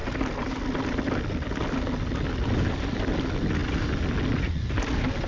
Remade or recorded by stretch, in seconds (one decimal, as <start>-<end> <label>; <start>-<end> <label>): 0.0-5.3 recorded